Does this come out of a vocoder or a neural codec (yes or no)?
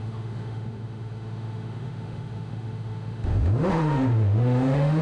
yes